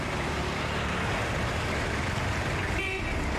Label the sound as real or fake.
real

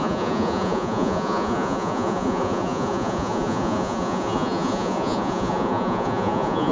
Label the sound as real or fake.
fake